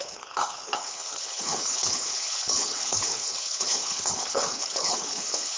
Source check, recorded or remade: remade